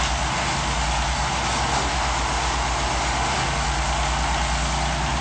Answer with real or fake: real